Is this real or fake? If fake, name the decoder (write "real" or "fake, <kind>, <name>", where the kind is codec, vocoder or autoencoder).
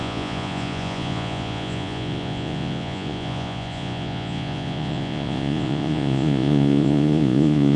fake, vocoder, Vocos